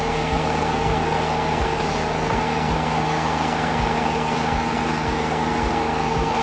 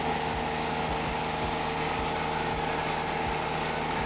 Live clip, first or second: second